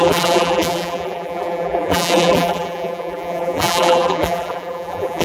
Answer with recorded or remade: remade